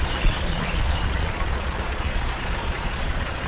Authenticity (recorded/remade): remade